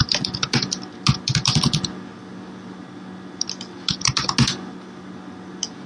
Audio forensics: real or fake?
real